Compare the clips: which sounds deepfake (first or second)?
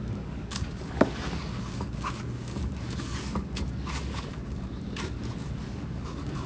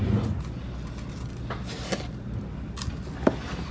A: first